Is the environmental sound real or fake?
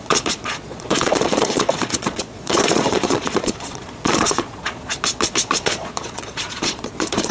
fake